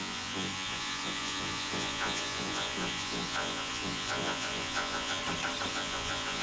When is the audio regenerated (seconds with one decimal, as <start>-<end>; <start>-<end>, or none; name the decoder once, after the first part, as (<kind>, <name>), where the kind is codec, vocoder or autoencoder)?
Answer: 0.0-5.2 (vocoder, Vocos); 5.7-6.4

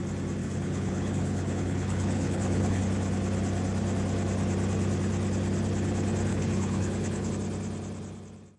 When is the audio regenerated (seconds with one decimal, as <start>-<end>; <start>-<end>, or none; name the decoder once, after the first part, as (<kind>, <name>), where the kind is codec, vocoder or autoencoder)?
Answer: 0.4-2.8 (codec, HILCodec); 6.3-7.3

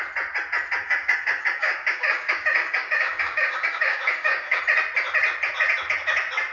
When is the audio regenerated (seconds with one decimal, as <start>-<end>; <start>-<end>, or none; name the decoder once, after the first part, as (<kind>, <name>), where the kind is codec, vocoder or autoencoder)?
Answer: 0.8-4.6 (codec, DAC)

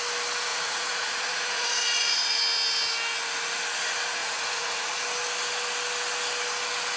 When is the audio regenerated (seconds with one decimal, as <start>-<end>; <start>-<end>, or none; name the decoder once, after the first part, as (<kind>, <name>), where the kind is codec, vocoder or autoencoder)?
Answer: 0.5-2.4 (vocoder, Vocos); 4.2-5.0